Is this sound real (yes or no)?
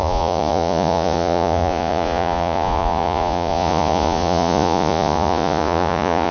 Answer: no